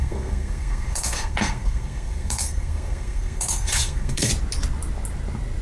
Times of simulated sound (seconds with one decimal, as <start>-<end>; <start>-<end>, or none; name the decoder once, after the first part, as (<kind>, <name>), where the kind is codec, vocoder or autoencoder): 0.0-4.3 (codec, SNAC)

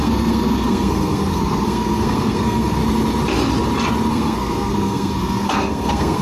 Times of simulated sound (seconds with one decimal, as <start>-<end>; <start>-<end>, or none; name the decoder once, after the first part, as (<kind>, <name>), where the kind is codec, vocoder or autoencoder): 0.0-2.8 (codec, SNAC); 4.1-6.2

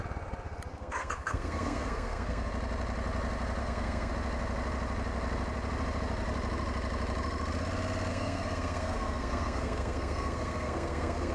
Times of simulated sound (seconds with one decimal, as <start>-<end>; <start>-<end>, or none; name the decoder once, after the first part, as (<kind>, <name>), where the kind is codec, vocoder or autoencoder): 0.7-2.5 (codec, SNAC); 3.6-4.1; 8.1-11.3

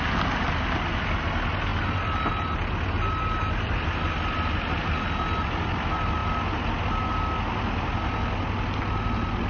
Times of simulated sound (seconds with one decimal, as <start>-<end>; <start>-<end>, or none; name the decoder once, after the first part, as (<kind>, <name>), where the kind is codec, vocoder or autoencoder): none